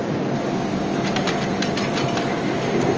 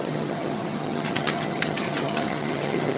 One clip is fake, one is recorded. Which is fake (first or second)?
second